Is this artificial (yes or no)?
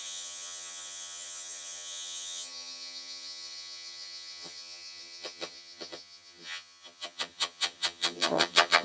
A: yes